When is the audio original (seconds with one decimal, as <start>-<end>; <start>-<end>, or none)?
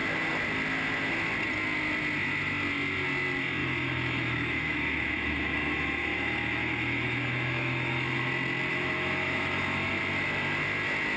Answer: 0.0-3.6; 8.2-8.7; 10.0-11.2